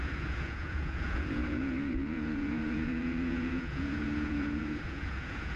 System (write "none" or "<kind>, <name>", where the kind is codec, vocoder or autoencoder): vocoder, Vocos